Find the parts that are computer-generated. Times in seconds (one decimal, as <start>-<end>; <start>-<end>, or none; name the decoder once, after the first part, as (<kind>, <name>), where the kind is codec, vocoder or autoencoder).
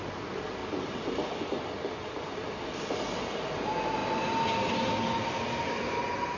none